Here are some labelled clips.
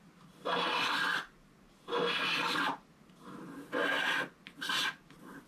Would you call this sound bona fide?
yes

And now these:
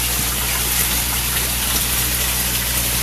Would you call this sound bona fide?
yes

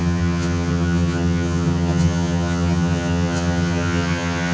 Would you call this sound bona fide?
no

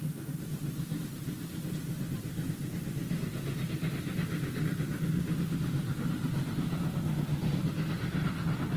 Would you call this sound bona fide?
yes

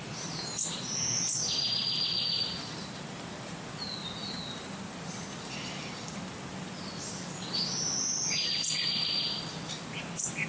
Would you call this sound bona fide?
yes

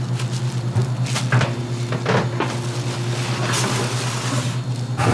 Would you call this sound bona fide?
yes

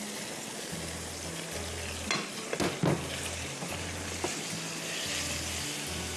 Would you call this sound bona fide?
yes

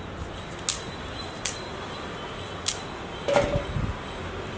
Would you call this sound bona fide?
yes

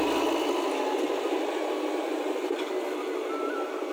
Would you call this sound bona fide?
yes